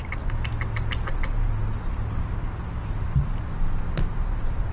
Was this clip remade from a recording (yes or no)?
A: no